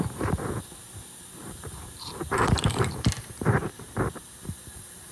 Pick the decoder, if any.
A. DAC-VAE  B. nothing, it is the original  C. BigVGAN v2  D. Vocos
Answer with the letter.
C